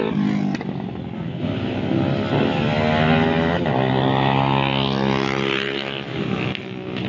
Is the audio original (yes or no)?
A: yes